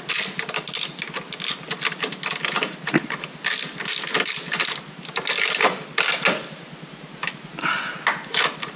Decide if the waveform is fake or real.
real